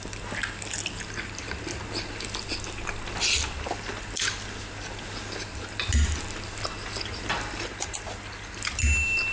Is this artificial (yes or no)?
no